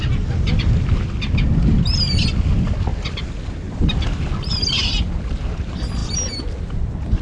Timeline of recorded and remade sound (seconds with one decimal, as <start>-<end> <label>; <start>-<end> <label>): 0.0-7.2 recorded